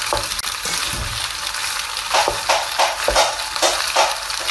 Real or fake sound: real